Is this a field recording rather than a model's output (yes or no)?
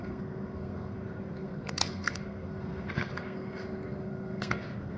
no